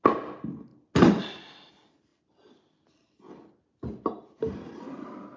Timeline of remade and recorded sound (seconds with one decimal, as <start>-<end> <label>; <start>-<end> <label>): 0.0-5.4 recorded